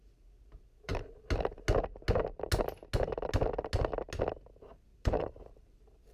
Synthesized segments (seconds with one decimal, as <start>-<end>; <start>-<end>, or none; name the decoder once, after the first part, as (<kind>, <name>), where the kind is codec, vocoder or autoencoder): 0.0-0.9 (vocoder, BigVGAN v2); 4.6-6.1